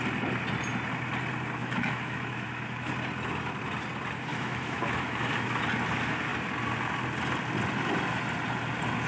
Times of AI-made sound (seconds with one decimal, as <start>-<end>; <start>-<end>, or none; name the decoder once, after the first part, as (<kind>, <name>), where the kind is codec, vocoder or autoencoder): 1.6-2.9 (autoencoder, DAC-VAE); 4.3-5.6